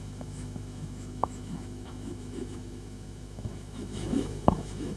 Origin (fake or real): fake